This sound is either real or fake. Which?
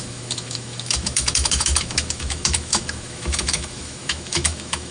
fake